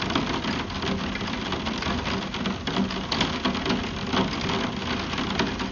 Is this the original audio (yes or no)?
yes